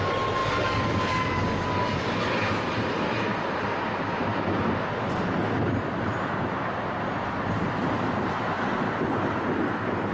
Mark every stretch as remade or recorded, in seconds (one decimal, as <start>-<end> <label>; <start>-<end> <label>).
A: 0.0-0.4 recorded; 0.4-2.2 remade; 2.2-10.1 recorded

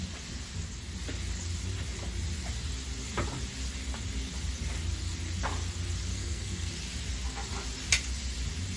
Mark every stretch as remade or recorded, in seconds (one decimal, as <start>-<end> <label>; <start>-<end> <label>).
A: 0.0-6.1 recorded; 6.1-6.7 remade; 6.7-8.8 recorded

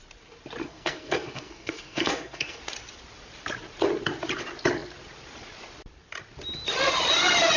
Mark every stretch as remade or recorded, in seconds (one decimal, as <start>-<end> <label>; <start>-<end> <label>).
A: 0.0-0.6 recorded; 0.6-2.6 remade; 2.6-7.6 recorded

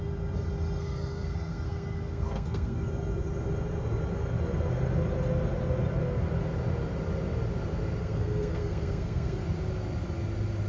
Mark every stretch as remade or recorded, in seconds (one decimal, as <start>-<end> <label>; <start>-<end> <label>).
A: 0.0-0.8 recorded; 0.8-2.9 remade; 2.9-8.0 recorded; 8.0-9.4 remade; 9.4-10.7 recorded

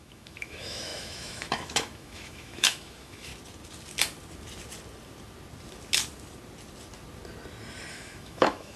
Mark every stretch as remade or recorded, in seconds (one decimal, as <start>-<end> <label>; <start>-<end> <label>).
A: 0.0-3.3 remade; 3.3-7.9 recorded; 7.9-8.8 remade

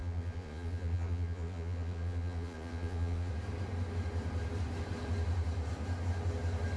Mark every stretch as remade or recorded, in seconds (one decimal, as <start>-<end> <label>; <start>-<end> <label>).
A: 0.0-3.3 remade; 3.3-6.8 recorded

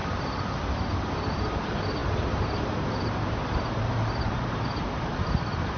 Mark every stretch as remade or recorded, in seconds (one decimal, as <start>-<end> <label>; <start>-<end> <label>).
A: 0.0-2.0 recorded; 2.0-5.8 remade